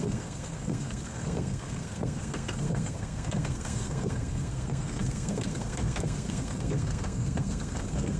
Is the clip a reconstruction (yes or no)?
yes